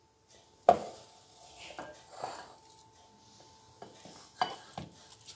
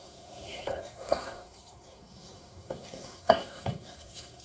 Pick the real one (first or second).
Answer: first